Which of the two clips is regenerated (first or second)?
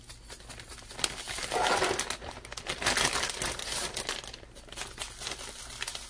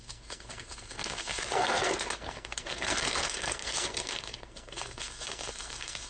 second